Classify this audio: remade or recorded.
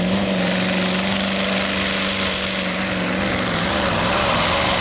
recorded